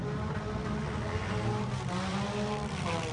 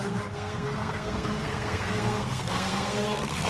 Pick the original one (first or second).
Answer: first